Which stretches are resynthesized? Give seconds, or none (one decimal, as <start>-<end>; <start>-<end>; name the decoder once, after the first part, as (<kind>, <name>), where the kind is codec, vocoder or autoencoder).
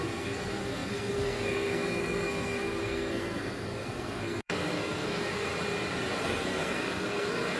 0.0-5.5 (codec, SNAC); 6.2-7.6